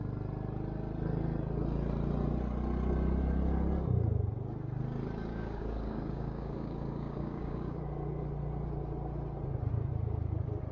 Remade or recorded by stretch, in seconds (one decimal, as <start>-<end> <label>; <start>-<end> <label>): 0.0-5.3 recorded; 5.3-7.8 remade; 7.8-10.7 recorded